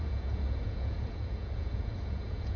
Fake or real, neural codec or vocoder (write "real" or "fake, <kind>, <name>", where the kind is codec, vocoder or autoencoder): fake, vocoder, Vocos